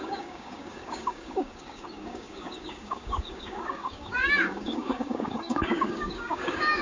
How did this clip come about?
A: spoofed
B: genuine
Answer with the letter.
A